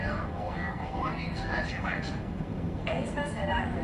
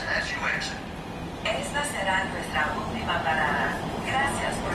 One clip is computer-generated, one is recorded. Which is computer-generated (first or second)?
first